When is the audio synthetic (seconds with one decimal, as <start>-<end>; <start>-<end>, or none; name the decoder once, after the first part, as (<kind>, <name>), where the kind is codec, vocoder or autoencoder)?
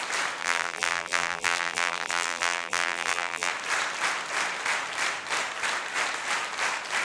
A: 0.4-3.5 (vocoder, BigVGAN v2)